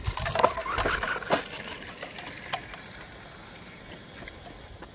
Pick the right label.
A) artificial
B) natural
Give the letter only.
B